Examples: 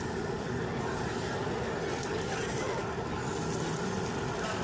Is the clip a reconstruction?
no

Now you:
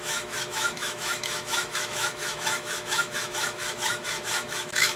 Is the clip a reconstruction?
yes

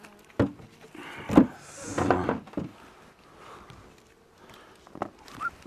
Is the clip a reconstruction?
no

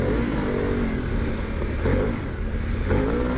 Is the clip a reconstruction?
no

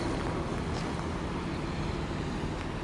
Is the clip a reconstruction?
no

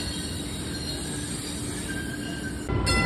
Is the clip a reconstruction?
no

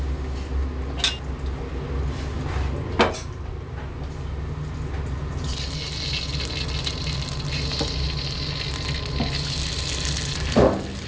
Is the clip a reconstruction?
no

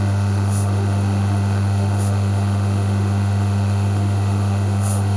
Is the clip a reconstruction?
yes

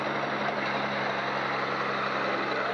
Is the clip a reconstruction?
no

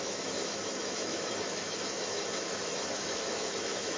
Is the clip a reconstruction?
yes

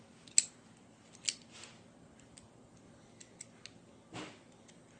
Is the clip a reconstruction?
no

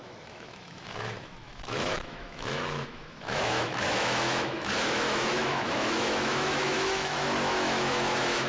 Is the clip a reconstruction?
yes